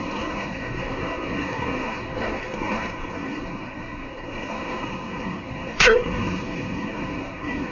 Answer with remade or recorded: remade